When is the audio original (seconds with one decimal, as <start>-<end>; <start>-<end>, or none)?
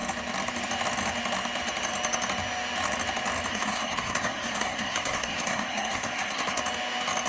0.0-3.5; 6.6-7.3